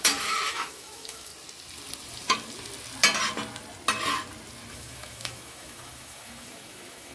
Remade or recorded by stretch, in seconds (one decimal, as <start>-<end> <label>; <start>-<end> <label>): 0.0-1.3 remade; 1.3-4.7 recorded; 4.7-7.1 remade